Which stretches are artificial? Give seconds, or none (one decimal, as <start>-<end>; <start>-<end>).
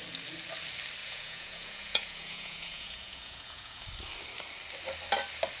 1.0-3.8